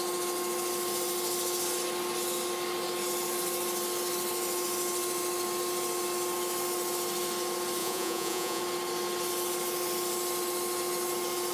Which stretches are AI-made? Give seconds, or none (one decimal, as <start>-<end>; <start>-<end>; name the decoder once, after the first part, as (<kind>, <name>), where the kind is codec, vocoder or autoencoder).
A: 7.8-8.6 (vocoder, Vocos)